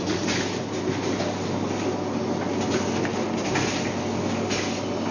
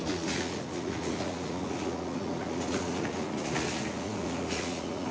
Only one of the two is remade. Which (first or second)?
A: second